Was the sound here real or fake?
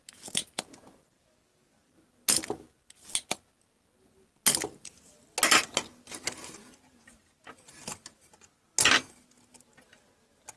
real